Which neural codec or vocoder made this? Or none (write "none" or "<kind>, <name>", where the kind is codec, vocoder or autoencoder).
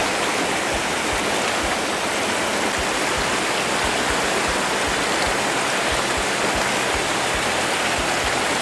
none